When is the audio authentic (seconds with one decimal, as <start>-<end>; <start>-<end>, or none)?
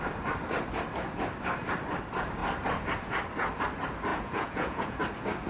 0.0-4.1; 5.0-5.5